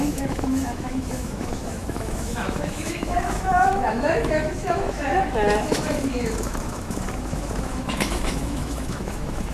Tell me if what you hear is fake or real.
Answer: fake